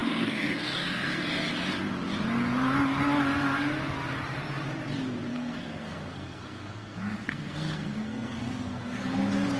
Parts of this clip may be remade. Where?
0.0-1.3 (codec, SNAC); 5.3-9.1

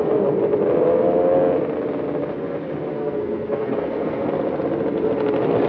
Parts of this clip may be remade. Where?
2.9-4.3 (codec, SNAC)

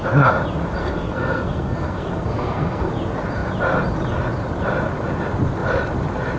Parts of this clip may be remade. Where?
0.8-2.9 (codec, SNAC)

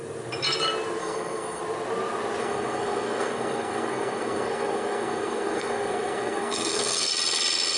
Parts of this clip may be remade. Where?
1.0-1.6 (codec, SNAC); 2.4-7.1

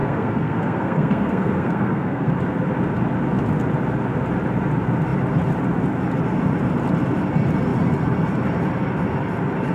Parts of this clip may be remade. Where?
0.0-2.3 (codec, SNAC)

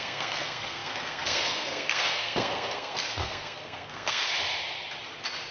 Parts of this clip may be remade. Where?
0.0-4.2 (codec, SNAC)

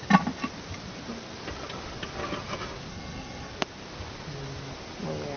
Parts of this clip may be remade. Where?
2.9-3.5 (codec, SNAC)